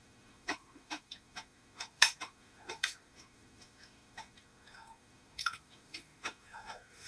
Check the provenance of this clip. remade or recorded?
remade